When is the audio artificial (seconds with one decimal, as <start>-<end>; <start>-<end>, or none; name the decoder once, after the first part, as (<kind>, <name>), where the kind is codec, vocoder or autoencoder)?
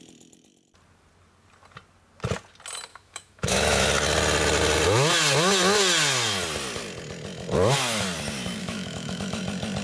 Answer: 2.9-3.9 (autoencoder, DAC-VAE); 8.6-9.4